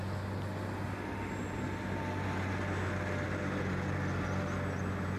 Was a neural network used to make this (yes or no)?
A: no